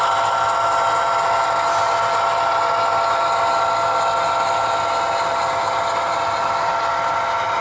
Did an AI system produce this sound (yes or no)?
no